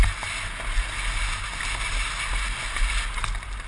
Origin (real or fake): real